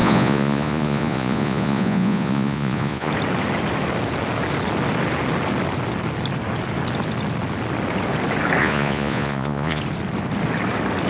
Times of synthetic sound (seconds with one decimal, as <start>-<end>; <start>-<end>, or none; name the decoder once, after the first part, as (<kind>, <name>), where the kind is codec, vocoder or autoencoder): 0.0-3.1 (vocoder, Vocos); 8.6-9.8